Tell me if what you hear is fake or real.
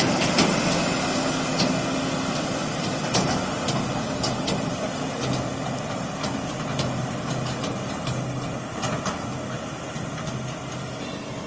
real